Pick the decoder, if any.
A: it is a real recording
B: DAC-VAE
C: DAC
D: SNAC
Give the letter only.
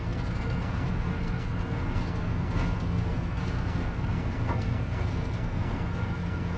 D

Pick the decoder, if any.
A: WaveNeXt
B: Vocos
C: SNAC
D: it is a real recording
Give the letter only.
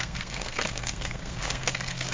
C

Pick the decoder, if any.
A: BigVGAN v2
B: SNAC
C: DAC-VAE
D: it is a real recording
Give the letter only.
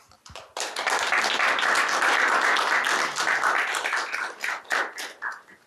D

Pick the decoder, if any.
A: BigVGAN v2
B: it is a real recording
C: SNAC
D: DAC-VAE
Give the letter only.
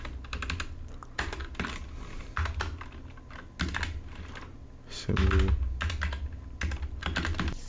B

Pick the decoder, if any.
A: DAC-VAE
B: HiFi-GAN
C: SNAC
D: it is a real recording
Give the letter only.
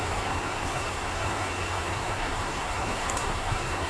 C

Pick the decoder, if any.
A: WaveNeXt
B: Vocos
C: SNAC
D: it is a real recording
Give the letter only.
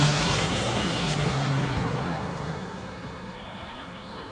C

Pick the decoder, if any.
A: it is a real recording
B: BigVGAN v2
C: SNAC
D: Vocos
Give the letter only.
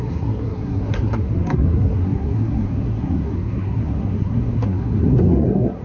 C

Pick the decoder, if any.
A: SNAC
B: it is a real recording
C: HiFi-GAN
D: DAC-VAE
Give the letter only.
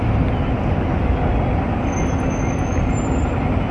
B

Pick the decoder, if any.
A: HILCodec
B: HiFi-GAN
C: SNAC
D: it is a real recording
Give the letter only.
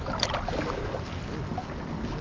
D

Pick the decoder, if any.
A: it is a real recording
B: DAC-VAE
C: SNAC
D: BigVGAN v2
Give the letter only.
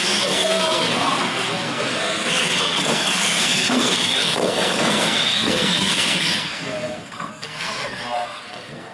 C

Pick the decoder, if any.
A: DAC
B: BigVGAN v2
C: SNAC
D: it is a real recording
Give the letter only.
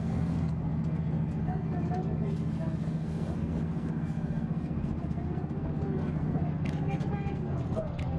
C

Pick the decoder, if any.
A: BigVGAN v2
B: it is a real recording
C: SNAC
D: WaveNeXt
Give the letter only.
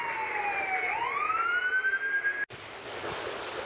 B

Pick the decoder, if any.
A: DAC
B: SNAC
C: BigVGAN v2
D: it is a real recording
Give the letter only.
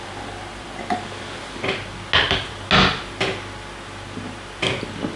D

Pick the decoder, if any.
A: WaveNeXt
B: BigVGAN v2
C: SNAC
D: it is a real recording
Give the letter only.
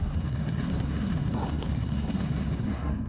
C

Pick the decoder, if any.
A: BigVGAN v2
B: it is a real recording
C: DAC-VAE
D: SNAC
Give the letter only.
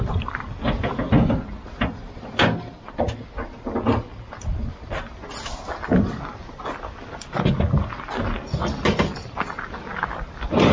B